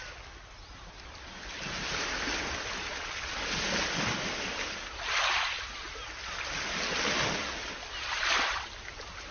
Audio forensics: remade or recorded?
recorded